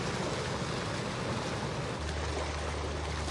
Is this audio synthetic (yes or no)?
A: no